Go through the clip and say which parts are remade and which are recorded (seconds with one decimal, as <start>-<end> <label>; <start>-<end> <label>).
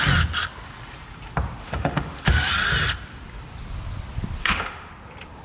0.0-1.6 recorded; 1.6-2.5 remade; 2.5-4.4 recorded; 4.4-4.9 remade; 4.9-5.4 recorded